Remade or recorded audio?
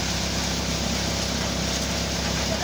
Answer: recorded